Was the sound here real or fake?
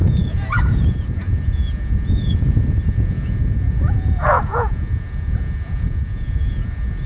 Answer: fake